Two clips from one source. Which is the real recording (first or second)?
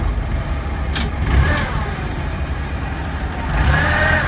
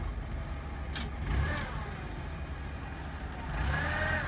second